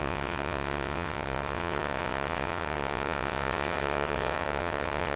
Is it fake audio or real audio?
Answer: fake